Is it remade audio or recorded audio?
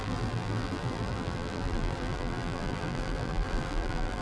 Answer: remade